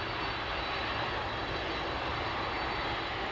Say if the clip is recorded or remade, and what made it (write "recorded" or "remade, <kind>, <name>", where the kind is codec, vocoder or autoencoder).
remade, vocoder, BigVGAN v2